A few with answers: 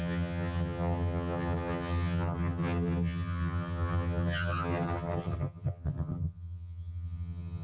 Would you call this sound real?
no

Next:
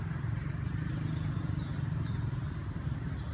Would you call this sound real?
yes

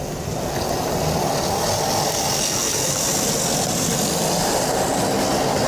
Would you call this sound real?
yes